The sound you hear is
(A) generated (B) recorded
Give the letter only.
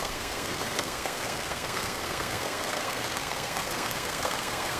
A